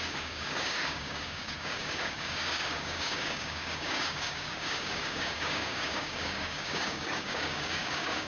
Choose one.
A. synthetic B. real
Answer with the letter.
A